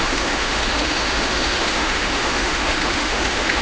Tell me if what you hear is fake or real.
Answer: fake